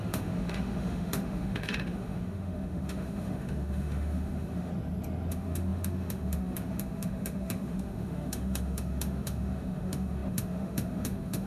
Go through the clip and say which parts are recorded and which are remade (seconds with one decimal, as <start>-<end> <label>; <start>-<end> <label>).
0.0-4.7 remade; 4.7-5.3 recorded; 5.3-11.5 remade